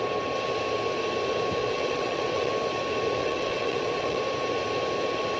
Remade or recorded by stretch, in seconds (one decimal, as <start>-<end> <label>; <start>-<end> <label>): 0.0-1.6 recorded; 1.6-2.5 remade; 2.5-3.2 recorded; 3.2-4.2 remade; 4.2-5.4 recorded